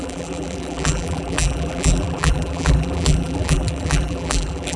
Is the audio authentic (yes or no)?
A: no